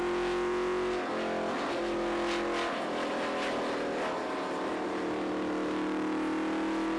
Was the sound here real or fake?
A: real